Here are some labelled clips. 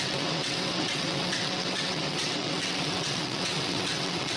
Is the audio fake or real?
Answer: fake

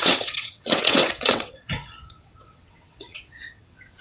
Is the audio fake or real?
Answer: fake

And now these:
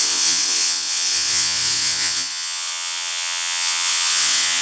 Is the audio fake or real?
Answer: fake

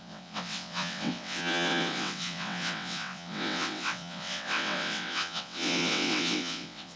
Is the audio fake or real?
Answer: fake